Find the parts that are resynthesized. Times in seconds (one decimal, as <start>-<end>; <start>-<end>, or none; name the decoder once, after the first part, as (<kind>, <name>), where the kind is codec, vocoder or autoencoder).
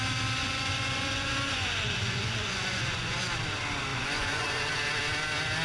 0.4-3.3 (vocoder, Vocos); 3.9-4.6